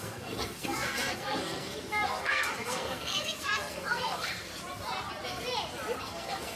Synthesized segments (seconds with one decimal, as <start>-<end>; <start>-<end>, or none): 0.0-4.5; 6.0-6.6